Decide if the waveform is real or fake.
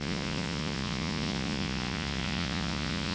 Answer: fake